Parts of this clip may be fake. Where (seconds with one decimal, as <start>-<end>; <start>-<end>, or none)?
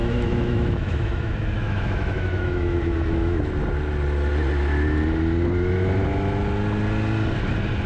0.0-3.5